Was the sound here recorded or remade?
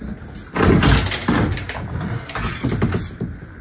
recorded